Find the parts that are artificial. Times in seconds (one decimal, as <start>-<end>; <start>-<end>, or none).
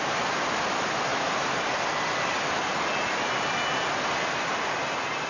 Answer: none